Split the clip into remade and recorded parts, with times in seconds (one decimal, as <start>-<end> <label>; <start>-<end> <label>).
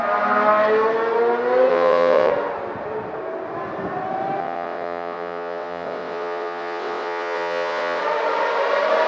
0.0-1.7 recorded; 1.7-2.3 remade; 2.3-4.4 recorded; 4.4-8.0 remade; 8.0-9.1 recorded